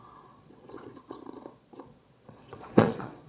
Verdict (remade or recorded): remade